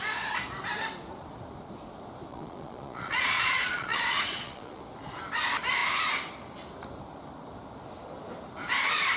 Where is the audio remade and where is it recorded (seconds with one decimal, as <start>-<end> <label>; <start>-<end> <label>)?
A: 0.0-2.3 recorded; 2.3-4.8 remade; 4.8-9.2 recorded